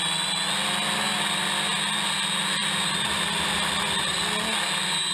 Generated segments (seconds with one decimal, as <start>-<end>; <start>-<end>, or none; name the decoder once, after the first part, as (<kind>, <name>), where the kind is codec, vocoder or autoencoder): none